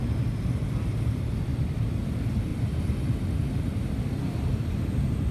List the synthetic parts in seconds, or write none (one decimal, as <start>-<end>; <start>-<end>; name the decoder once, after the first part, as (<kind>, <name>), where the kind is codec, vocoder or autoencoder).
0.0-2.5 (vocoder, BigVGAN v2); 3.6-5.3